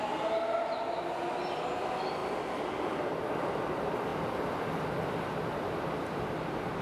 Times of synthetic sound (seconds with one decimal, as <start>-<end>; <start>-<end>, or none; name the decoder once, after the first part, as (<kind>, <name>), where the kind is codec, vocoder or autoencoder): none